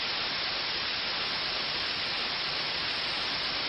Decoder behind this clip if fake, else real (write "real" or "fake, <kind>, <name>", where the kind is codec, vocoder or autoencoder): real